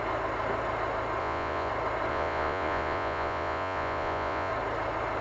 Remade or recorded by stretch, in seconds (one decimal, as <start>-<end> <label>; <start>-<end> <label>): 0.0-1.2 recorded; 1.2-1.7 remade; 1.7-2.1 recorded; 2.1-4.5 remade; 4.5-5.2 recorded